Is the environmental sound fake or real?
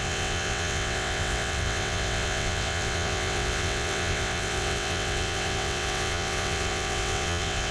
fake